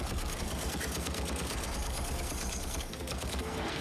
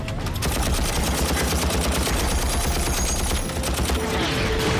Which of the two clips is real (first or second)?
second